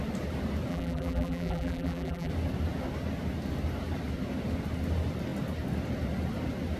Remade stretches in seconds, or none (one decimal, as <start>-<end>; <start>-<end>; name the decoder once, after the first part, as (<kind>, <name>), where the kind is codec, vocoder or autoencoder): 0.7-2.3 (vocoder, BigVGAN v2)